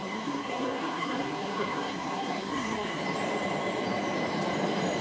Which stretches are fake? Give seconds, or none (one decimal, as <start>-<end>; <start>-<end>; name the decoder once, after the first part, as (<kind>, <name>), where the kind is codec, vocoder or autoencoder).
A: 0.0-3.0 (codec, SNAC)